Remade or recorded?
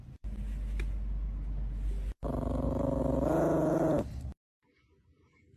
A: recorded